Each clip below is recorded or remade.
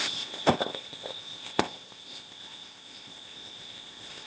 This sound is remade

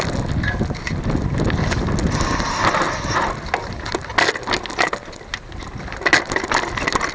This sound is recorded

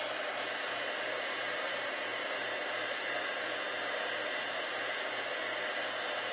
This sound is recorded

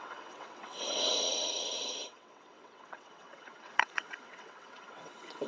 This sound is remade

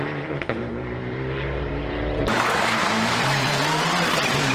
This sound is remade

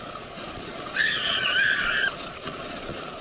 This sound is remade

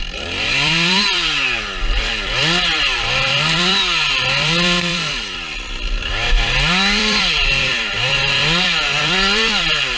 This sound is remade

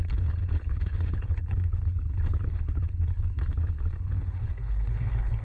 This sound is remade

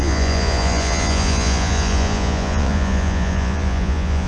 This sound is remade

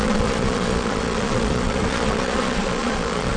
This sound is remade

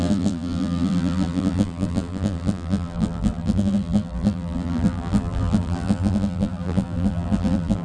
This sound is remade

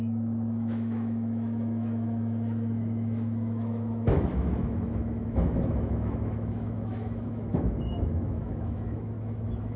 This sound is remade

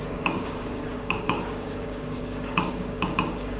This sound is remade